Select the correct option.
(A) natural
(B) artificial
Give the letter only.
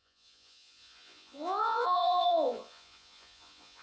B